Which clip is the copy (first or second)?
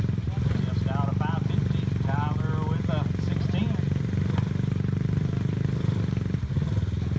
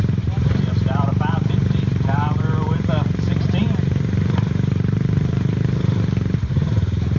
second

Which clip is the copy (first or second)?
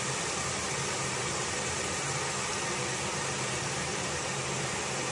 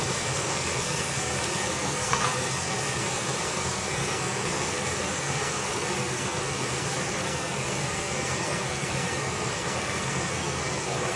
second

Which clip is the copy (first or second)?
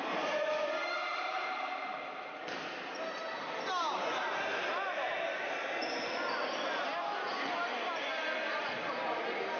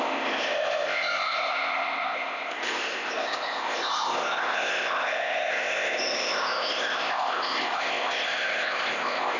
second